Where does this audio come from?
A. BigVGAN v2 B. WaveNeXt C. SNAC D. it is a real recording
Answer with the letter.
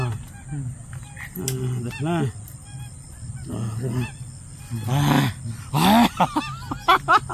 D